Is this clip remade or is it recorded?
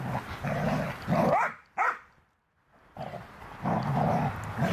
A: recorded